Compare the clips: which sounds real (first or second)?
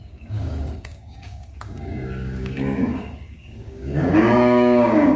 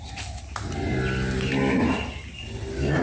second